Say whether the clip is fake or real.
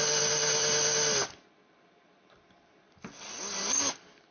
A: real